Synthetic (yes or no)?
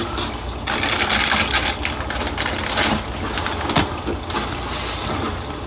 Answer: no